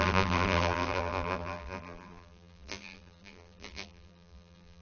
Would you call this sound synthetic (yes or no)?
yes